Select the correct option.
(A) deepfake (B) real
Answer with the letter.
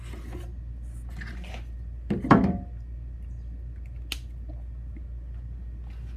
B